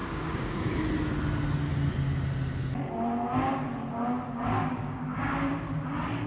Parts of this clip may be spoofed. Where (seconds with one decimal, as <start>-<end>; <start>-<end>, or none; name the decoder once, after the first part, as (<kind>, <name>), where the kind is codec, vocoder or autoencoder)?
0.0-0.7 (codec, DAC); 4.6-5.5